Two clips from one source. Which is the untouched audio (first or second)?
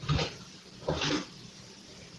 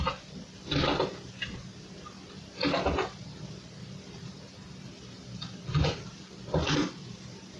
second